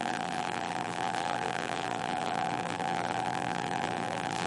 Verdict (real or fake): fake